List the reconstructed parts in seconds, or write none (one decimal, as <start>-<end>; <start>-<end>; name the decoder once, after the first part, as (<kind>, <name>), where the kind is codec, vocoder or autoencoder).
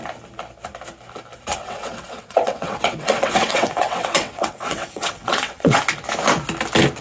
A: 1.6-5.8 (vocoder, WaveNeXt)